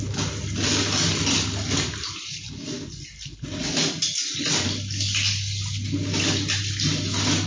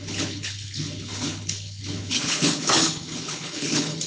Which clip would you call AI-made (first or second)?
second